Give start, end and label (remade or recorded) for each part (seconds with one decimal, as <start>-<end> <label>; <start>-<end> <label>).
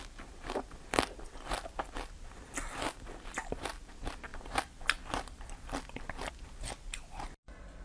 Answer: 0.0-3.4 recorded; 3.4-3.9 remade; 3.9-4.3 recorded; 4.3-6.3 remade; 6.3-7.8 recorded